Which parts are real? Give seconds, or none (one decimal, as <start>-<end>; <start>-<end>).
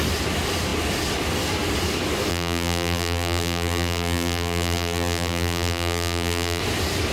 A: 0.0-2.3; 6.6-7.1